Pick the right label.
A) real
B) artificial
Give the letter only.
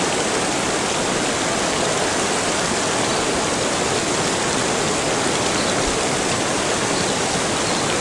A